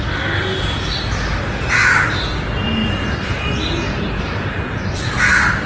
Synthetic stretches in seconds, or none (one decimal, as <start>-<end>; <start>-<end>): 2.8-3.5